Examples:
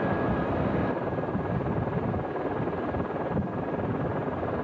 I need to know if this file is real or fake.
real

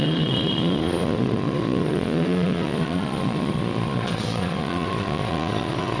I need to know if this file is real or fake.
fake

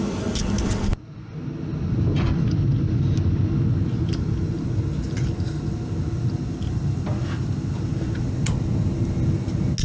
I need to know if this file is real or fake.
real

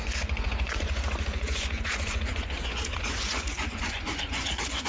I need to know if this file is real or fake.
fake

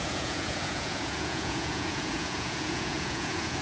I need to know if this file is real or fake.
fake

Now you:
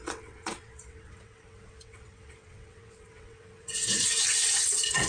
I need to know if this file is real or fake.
fake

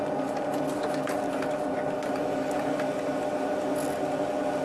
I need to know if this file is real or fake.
real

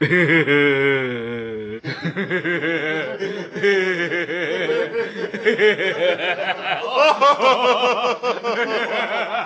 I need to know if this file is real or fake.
real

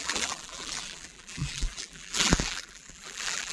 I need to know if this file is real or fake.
fake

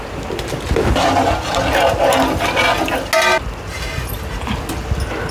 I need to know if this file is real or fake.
real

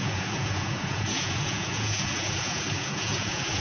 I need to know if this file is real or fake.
fake